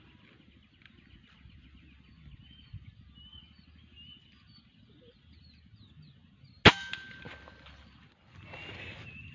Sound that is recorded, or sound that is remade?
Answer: recorded